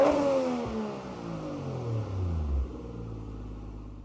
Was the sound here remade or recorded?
recorded